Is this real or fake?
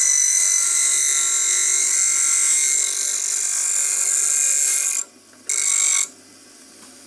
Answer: real